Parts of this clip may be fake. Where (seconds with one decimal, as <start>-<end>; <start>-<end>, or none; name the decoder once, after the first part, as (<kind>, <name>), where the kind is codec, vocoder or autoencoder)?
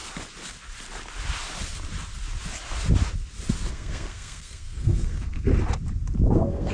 3.7-5.5 (codec, SNAC); 6.3-6.7